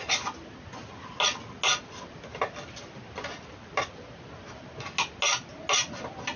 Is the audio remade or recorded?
recorded